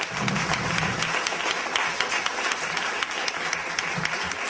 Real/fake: real